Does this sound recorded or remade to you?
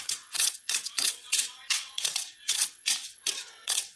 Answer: remade